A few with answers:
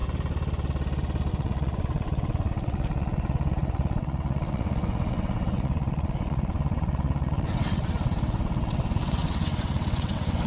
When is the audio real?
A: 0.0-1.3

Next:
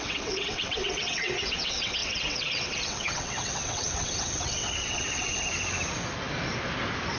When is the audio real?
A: 5.3-7.2

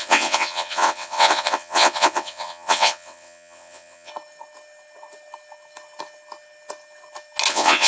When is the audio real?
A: 4.1-7.5

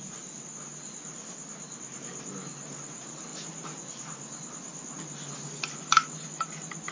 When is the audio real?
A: 0.0-6.9

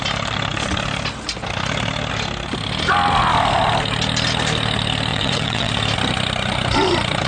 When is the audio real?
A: 0.0-5.1; 5.7-7.3

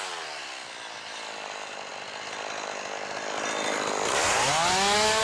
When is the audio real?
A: 0.0-5.2

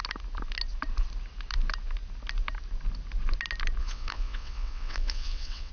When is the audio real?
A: 0.0-3.8

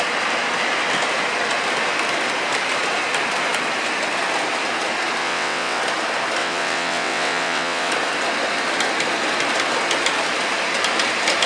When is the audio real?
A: 0.0-5.2; 5.8-6.4; 7.9-11.5